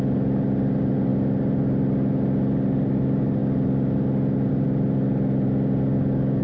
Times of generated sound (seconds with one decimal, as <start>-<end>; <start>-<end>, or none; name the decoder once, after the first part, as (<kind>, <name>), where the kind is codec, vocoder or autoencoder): none

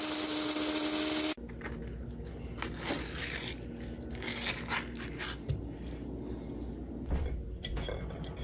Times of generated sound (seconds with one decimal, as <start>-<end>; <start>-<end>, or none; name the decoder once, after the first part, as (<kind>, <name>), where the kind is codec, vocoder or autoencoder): none